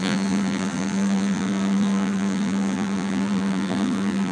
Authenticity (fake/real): fake